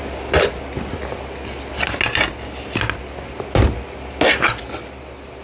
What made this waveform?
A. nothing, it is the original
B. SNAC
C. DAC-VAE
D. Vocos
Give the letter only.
A